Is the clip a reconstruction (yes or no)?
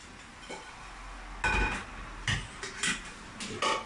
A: no